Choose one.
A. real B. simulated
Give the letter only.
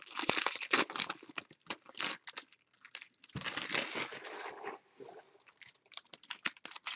A